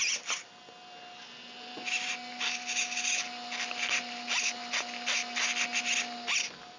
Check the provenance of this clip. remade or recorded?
recorded